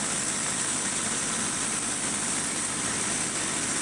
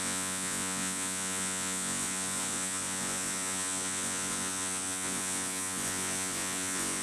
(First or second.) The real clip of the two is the first